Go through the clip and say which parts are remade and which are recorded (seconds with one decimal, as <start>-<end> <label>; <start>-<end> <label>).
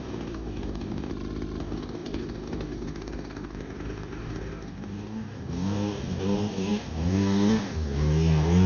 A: 0.0-1.1 remade; 1.1-1.6 recorded; 1.6-8.7 remade